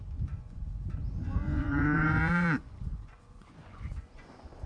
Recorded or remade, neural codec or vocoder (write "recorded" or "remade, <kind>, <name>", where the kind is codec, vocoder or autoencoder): remade, vocoder, Vocos